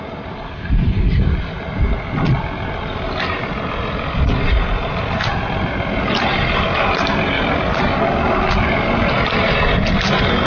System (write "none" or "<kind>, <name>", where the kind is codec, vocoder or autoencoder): none